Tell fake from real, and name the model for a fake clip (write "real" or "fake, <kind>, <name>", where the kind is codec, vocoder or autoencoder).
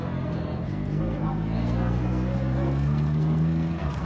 fake, codec, SNAC